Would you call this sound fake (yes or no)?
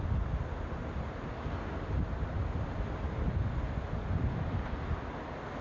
no